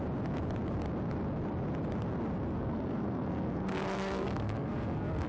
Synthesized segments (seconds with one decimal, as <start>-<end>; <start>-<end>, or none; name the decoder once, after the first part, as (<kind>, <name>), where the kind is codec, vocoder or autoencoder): 2.6-5.3 (codec, SNAC)